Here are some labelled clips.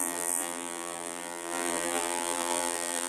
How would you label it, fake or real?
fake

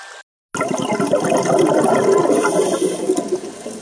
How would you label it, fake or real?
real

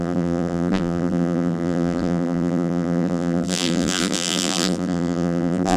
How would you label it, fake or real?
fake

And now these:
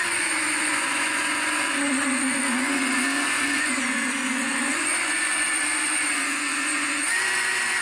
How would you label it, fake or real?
fake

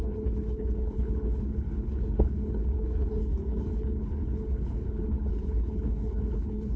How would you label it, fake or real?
fake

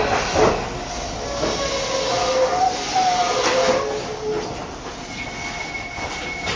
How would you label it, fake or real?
real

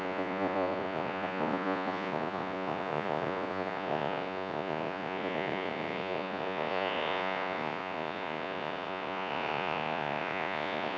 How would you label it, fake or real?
fake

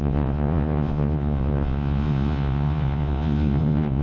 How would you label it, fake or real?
fake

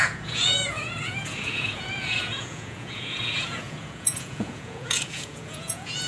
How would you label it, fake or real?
fake